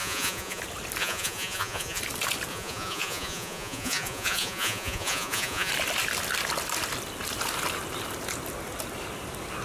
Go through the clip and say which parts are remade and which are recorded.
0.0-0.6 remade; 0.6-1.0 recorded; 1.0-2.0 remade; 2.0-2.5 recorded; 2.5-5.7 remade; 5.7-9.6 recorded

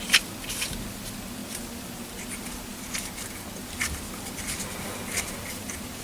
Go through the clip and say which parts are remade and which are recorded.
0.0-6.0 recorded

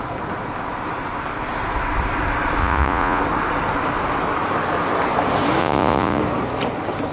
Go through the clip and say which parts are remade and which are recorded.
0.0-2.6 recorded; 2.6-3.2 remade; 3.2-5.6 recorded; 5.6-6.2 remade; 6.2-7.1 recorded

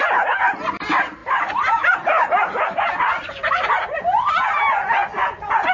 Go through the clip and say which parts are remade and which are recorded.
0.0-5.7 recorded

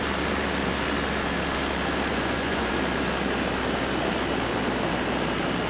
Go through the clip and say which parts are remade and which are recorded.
0.0-2.1 recorded; 2.1-2.7 remade; 2.7-5.7 recorded